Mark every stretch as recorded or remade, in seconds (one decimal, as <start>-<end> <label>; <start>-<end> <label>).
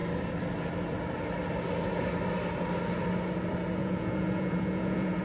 0.0-3.8 recorded; 3.8-5.2 remade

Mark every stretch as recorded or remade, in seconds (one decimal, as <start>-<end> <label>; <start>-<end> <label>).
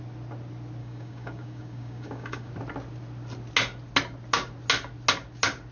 0.0-0.8 recorded; 0.8-2.5 remade; 2.5-5.7 recorded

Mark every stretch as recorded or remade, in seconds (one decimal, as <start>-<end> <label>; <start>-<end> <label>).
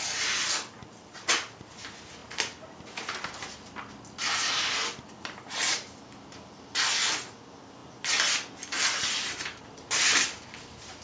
0.0-11.0 recorded